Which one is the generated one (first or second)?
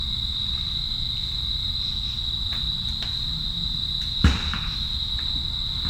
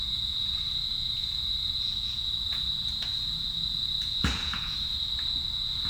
second